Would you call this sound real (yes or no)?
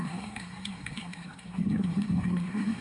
no